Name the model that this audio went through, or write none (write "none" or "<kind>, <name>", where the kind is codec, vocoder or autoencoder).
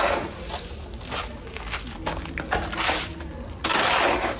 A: none